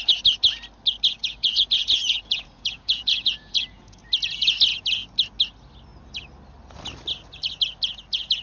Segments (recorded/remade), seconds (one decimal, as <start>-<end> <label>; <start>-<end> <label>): 0.0-1.2 recorded; 1.2-4.0 remade; 4.0-8.4 recorded